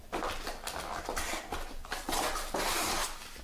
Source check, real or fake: real